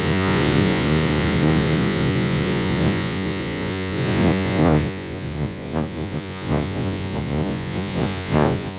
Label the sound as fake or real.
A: fake